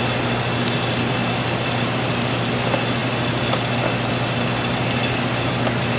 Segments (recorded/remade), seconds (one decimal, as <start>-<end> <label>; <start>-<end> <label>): 0.0-6.0 recorded

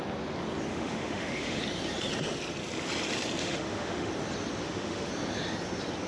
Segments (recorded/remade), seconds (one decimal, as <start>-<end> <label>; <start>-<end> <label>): 0.0-0.7 recorded; 0.7-1.6 remade; 1.6-3.4 recorded; 3.4-4.1 remade; 4.1-4.6 recorded; 4.6-5.1 remade; 5.1-6.1 recorded

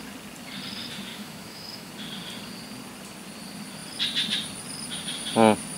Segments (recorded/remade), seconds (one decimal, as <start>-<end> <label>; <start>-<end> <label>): 0.0-1.1 recorded; 1.1-1.9 remade; 1.9-5.8 recorded

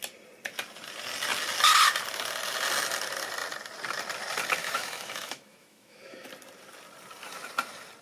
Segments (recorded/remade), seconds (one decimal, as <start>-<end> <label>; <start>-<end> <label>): 0.0-4.6 recorded; 4.6-6.3 remade; 6.3-8.0 recorded

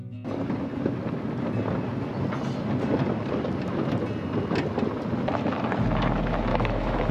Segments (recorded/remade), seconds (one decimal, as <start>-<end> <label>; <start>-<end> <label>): 0.0-6.5 recorded; 6.5-7.1 remade

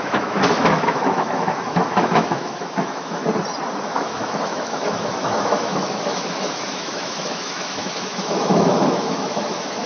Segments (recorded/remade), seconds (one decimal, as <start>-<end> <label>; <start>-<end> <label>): 0.0-3.2 remade; 3.2-3.8 recorded; 3.8-9.9 remade

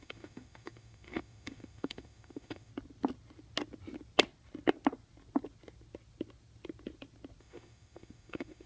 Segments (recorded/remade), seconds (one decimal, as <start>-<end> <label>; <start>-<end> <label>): 0.0-2.7 remade; 2.7-7.4 recorded; 7.4-8.7 remade

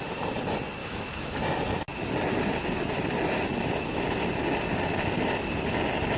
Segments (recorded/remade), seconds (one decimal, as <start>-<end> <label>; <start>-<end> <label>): 0.0-0.8 recorded; 0.8-1.4 remade; 1.4-6.2 recorded